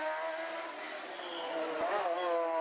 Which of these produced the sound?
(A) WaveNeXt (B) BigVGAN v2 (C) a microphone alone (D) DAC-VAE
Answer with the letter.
C